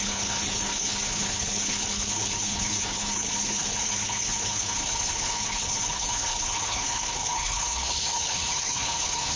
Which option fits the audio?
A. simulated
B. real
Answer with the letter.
A